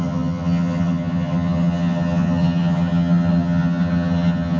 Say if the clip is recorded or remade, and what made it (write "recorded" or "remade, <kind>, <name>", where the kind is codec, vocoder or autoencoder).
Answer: remade, vocoder, HiFi-GAN